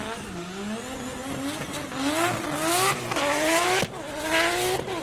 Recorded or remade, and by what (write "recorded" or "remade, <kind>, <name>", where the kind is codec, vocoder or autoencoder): recorded